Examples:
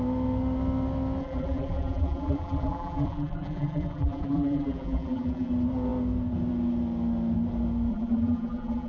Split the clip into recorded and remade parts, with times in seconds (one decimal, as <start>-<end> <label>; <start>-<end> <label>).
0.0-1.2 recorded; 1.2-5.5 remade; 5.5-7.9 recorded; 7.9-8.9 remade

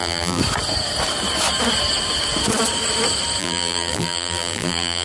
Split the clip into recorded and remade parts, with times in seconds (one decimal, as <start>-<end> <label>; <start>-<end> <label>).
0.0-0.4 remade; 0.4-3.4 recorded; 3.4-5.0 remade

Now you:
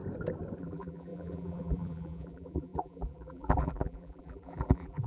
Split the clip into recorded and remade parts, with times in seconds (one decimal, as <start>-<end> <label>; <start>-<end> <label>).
0.0-0.6 recorded; 0.6-5.1 remade

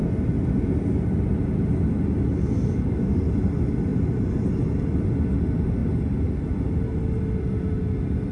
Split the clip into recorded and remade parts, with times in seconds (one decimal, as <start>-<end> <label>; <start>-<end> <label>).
0.0-8.3 recorded

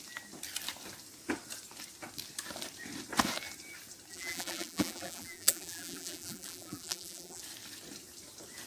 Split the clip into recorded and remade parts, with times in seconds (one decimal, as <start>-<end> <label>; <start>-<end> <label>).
0.0-4.1 recorded; 4.1-7.4 remade; 7.4-8.7 recorded

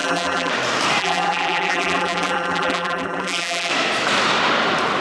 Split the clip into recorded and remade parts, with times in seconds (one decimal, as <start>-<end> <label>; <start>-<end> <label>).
0.0-0.5 remade; 0.5-1.0 recorded; 1.0-3.7 remade; 3.7-5.0 recorded